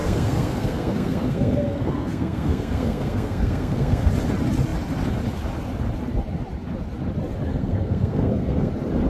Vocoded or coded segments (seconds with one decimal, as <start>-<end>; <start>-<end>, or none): 0.0-4.1; 7.5-8.7